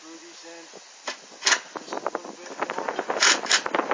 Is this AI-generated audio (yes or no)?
no